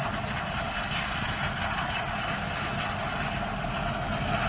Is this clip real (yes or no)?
yes